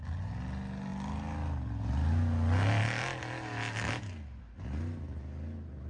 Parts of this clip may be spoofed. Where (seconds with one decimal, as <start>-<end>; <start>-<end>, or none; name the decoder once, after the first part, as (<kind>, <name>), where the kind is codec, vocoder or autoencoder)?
none